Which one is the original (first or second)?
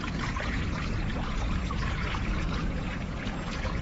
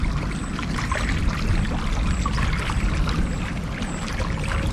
second